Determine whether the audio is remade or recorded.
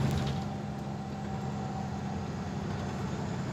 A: recorded